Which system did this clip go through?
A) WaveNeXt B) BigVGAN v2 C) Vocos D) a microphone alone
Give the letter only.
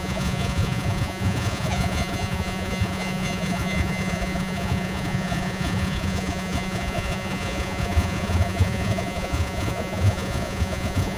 C